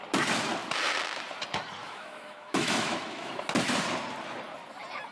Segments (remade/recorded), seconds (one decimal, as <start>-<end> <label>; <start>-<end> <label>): 0.0-1.8 recorded; 1.8-3.3 remade; 3.3-5.1 recorded